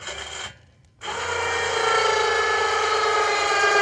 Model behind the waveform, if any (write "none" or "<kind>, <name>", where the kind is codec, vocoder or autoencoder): none